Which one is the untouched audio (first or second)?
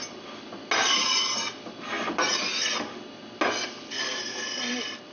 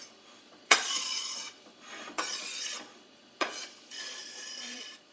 first